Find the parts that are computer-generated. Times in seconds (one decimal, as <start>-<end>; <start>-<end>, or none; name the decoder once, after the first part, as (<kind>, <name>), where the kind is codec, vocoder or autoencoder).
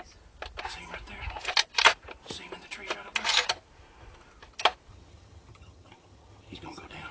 4.9-7.1 (vocoder, HiFi-GAN)